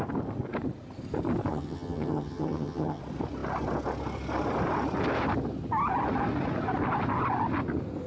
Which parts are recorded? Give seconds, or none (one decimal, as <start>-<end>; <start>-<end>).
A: 0.0-1.5; 3.0-8.1